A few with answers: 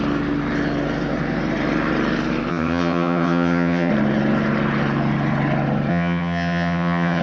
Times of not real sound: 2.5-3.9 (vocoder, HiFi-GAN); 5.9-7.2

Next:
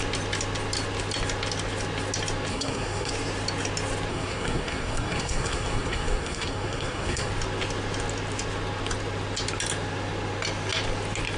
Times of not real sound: 2.5-3.1 (codec, SNAC); 4.1-7.3

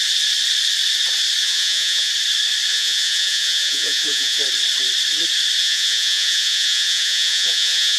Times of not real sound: 1.4-2.1 (vocoder, Vocos); 2.7-4.4; 5.6-8.0